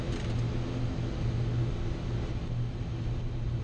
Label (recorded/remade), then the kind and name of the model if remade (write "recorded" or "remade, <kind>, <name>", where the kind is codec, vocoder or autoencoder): recorded